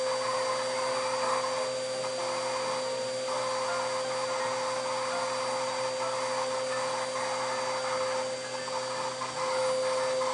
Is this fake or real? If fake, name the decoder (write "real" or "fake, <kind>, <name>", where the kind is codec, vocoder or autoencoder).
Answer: real